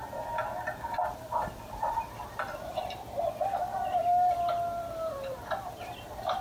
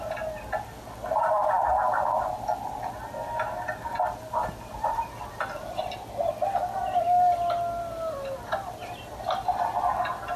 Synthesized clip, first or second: first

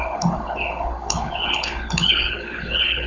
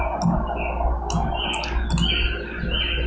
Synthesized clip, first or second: first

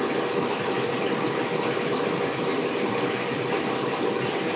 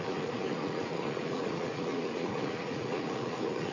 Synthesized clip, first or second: second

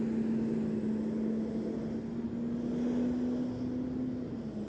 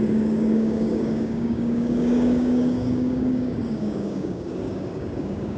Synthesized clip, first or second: second